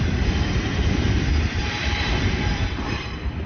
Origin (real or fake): fake